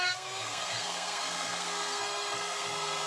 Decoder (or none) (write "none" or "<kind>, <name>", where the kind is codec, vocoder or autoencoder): codec, SNAC